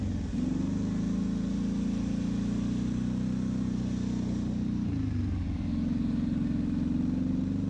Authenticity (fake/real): real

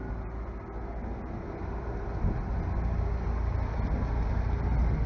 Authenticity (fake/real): real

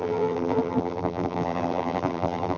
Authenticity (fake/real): fake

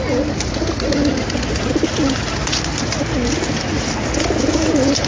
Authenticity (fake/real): real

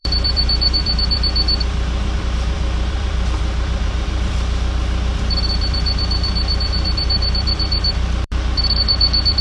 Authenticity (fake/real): fake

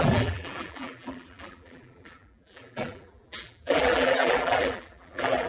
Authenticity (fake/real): fake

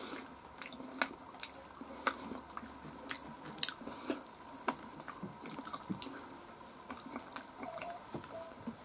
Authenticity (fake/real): real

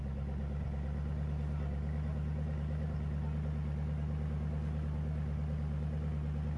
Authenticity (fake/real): real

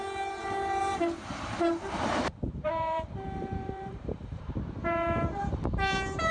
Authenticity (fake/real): fake